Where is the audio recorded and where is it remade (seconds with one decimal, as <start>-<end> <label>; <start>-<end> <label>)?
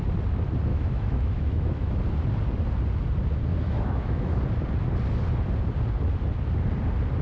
0.0-0.7 recorded; 0.7-2.0 remade; 2.0-3.5 recorded; 3.5-4.4 remade; 4.4-7.2 recorded